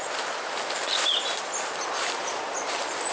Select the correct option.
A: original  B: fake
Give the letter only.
A